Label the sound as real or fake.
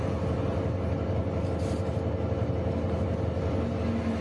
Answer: real